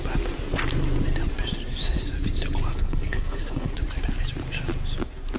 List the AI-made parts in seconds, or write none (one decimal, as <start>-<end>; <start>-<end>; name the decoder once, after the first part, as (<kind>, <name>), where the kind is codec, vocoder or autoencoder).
2.7-3.7 (codec, HILCodec)